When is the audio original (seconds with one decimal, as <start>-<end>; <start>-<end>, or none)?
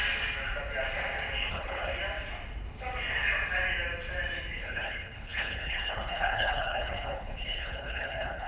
0.0-1.5; 1.9-4.6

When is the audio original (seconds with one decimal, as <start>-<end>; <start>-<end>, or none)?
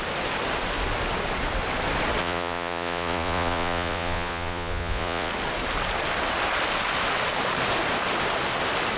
0.0-2.2; 5.3-9.0